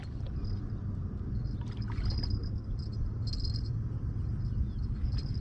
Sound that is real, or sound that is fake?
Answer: real